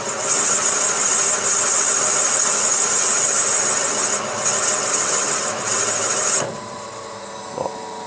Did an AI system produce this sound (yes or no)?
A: no